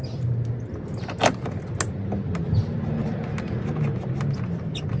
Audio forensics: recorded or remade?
recorded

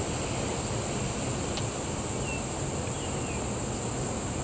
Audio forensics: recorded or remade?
recorded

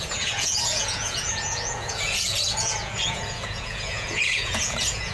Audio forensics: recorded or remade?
remade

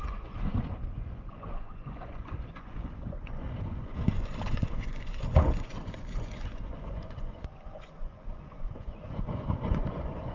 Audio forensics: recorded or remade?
remade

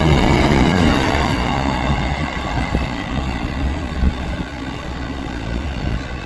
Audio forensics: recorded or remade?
remade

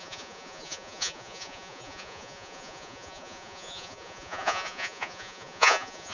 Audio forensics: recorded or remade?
remade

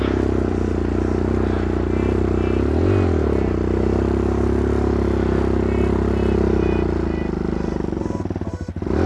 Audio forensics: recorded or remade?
recorded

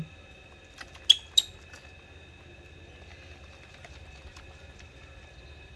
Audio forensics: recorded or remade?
recorded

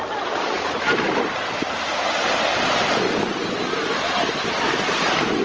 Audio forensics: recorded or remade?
recorded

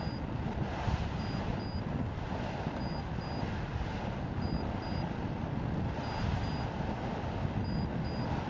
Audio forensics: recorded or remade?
recorded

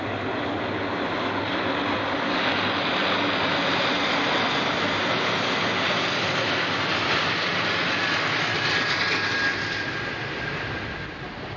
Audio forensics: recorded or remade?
recorded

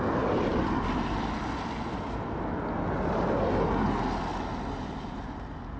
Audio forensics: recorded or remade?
recorded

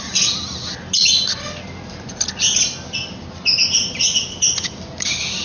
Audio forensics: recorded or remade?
recorded